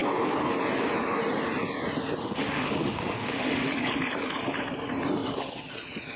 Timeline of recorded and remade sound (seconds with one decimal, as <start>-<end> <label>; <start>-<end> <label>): 0.0-2.2 recorded; 2.2-3.7 remade; 3.7-6.2 recorded

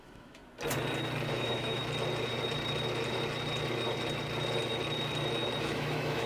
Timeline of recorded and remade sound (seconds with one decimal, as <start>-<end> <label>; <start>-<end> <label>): 0.0-0.4 remade; 0.4-1.3 recorded; 1.3-1.8 remade; 1.8-5.6 recorded; 5.6-6.3 remade